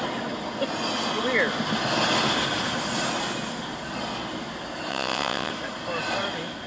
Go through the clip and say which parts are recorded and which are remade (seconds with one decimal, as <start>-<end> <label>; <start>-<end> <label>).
0.0-4.9 recorded; 4.9-5.5 remade; 5.5-6.7 recorded